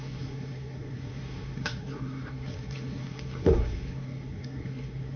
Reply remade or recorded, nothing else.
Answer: remade